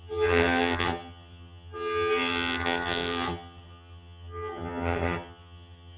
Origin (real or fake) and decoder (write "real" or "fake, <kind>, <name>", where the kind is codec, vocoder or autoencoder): fake, vocoder, HiFi-GAN